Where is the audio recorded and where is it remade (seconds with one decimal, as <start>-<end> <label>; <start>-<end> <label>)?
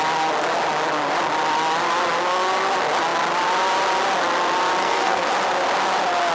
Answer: 0.0-4.8 recorded; 4.8-5.3 remade; 5.3-6.3 recorded